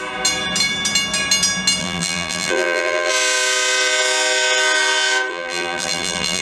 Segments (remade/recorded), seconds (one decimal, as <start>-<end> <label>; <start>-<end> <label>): 0.0-1.8 recorded; 1.8-3.1 remade; 3.1-5.3 recorded; 5.3-6.4 remade